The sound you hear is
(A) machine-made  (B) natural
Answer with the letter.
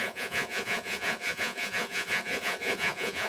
A